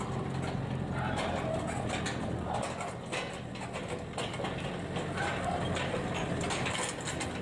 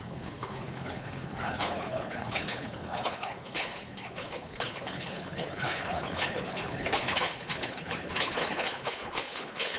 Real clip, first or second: first